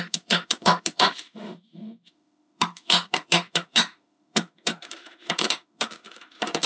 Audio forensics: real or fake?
fake